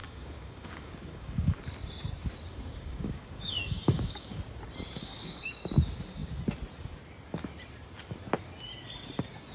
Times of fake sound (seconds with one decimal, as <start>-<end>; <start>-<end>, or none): 0.0-1.6; 2.5-4.4; 5.0-5.6